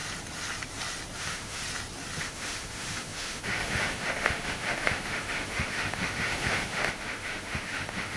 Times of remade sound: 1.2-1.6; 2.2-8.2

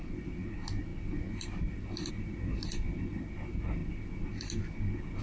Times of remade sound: none

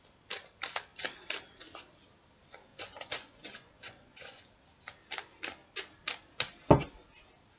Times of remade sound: 2.7-4.5

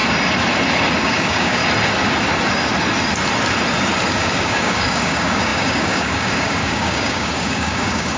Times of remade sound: 1.0-1.6; 4.1-8.2

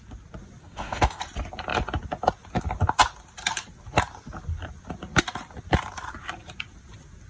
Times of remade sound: 0.6-1.2

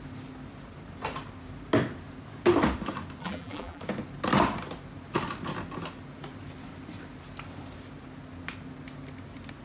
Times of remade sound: 3.2-3.8

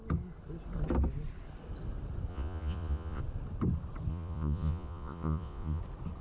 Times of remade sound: 2.3-3.2; 4.1-5.8